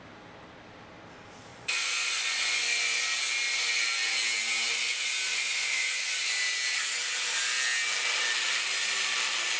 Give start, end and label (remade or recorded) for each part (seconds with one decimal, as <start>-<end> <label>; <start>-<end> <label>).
0.0-1.5 recorded; 1.5-3.0 remade; 3.0-5.3 recorded; 5.3-6.2 remade; 6.2-9.6 recorded